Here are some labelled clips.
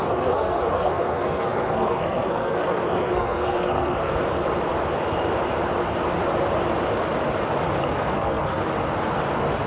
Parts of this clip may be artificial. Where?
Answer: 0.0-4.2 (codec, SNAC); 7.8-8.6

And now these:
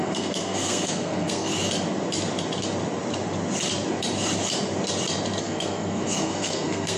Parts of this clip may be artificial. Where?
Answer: 0.0-1.5 (codec, SNAC); 5.4-7.0

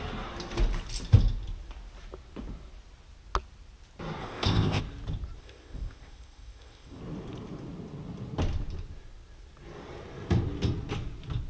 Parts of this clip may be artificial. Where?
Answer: 4.2-4.8 (codec, ZipCodec); 5.4-7.0

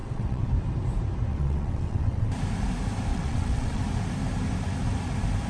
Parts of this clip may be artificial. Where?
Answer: 0.0-0.5 (vocoder, WaveNeXt); 1.3-2.3; 3.1-3.8

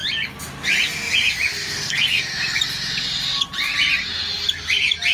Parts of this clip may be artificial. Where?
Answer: 1.5-2.2 (codec, SNAC)

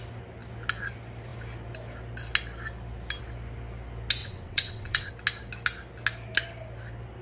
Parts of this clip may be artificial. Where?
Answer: 4.2-5.1 (vocoder, WaveNeXt)